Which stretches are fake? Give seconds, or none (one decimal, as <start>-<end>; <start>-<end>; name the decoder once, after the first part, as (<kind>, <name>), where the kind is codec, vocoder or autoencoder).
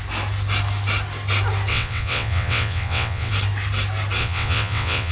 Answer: 1.7-3.3 (vocoder, WaveNeXt); 4.2-5.1